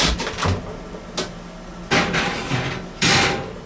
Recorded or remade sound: recorded